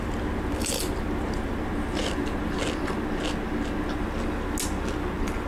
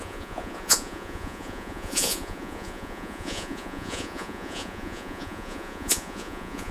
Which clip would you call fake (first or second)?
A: second